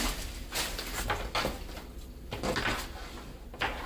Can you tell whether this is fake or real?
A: real